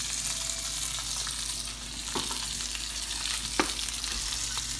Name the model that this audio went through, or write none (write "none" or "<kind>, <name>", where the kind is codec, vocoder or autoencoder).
none